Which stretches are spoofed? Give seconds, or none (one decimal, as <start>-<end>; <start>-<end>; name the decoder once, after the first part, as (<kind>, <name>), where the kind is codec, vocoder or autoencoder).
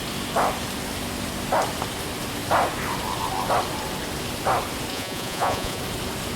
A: 4.9-5.8 (vocoder, Vocos)